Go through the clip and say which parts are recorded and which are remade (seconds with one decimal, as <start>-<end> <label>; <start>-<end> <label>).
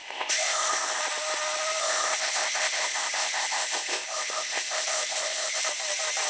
0.0-1.0 remade; 1.0-1.8 recorded; 1.8-5.6 remade; 5.6-6.3 recorded